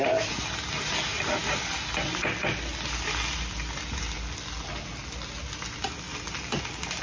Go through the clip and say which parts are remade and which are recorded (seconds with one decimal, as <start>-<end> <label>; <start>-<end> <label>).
0.0-7.0 recorded